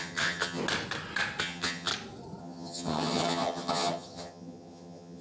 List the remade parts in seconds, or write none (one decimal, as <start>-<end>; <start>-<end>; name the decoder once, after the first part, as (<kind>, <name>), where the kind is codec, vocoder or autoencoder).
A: 0.0-0.6 (vocoder, HiFi-GAN); 1.4-1.9; 2.4-5.2